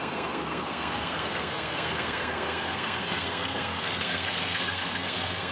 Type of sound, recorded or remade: remade